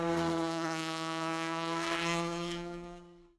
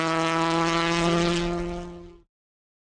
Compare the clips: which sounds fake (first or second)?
first